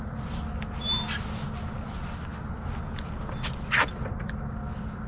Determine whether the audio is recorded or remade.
recorded